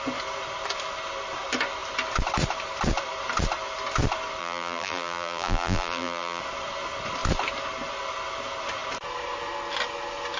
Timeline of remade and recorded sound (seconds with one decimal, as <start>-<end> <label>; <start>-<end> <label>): 0.0-4.4 recorded; 4.4-6.4 remade; 6.4-10.4 recorded